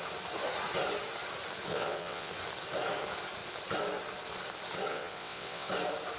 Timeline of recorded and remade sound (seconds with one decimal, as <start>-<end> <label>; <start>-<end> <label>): 0.0-1.7 recorded; 1.7-2.3 remade; 2.3-4.9 recorded; 4.9-5.7 remade; 5.7-6.2 recorded